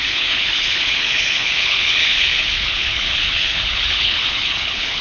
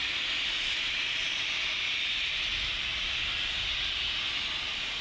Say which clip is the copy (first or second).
first